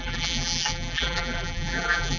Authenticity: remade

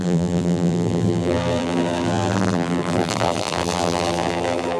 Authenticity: remade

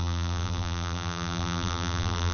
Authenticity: remade